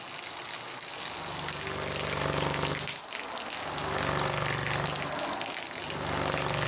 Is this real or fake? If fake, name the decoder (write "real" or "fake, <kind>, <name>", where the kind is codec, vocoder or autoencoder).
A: real